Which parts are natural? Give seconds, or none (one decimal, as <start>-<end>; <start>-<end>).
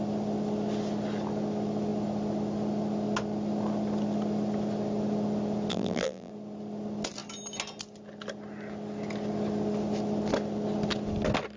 0.0-5.7; 6.3-11.6